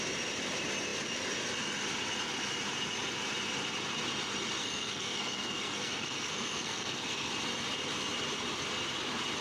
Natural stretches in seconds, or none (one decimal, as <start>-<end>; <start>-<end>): 0.0-4.6; 7.3-9.4